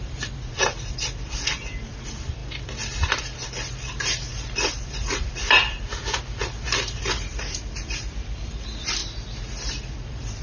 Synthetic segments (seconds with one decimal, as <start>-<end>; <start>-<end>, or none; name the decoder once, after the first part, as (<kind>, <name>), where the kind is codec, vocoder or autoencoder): 0.0-2.4 (vocoder, BigVGAN v2); 3.2-9.0; 9.7-10.4